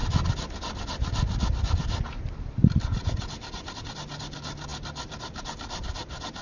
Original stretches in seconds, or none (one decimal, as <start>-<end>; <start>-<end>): 0.0-6.4